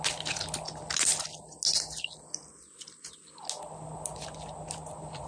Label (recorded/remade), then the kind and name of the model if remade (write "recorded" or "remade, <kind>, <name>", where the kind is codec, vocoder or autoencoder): recorded